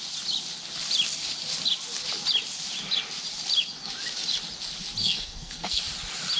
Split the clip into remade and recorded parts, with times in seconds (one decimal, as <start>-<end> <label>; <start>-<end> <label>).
0.0-5.0 recorded; 5.0-5.8 remade; 5.8-6.4 recorded